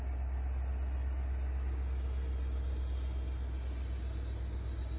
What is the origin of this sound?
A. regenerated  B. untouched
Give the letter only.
B